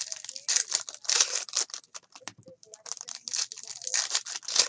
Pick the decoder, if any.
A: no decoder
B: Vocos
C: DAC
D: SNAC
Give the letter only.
A